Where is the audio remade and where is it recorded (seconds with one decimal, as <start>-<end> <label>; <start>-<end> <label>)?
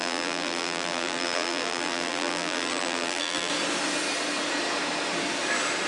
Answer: 0.0-3.5 remade; 3.5-5.9 recorded